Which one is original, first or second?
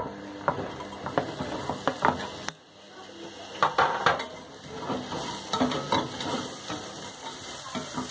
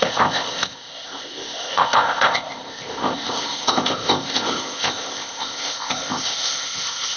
first